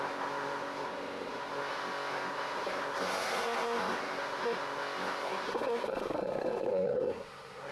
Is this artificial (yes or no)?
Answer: yes